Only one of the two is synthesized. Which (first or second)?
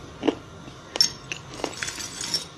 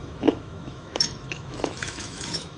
second